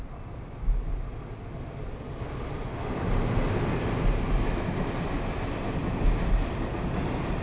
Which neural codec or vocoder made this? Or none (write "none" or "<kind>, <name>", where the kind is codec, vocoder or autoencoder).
none